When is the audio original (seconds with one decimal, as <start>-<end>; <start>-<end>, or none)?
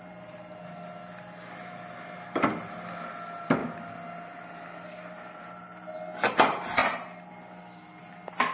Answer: 0.0-8.5